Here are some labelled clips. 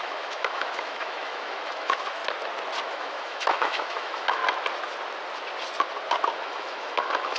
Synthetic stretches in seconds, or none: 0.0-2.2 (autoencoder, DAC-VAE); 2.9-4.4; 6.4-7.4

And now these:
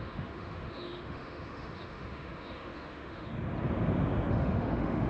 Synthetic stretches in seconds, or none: 0.0-3.3 (autoencoder, DAC-VAE); 4.3-5.1

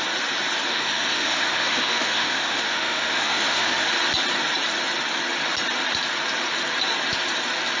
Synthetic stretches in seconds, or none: 0.7-3.9 (autoencoder, DAC-VAE)